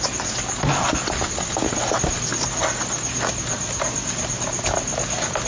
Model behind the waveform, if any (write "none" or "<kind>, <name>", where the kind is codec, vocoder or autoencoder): none